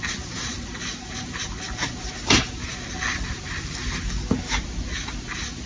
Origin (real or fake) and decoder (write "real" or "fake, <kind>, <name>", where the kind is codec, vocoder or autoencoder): real